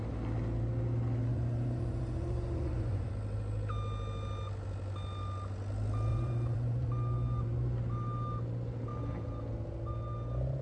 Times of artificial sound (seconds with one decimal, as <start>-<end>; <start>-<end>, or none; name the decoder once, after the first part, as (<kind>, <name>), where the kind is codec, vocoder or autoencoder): 1.3-3.1 (vocoder, Vocos); 6.1-6.9